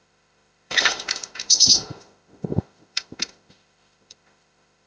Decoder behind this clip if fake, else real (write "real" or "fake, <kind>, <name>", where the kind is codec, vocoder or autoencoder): fake, autoencoder, DAC-VAE